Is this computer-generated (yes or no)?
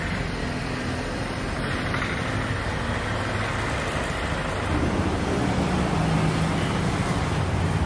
no